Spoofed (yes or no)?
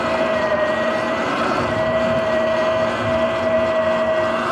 no